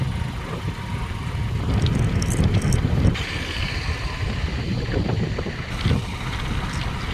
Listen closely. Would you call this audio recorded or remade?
recorded